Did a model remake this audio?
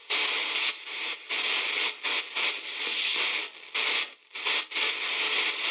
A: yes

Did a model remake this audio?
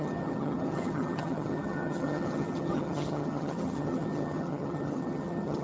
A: yes